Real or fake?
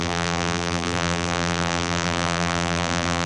fake